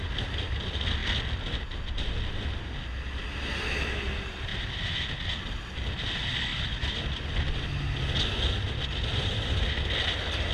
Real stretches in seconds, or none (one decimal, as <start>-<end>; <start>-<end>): 0.0-10.5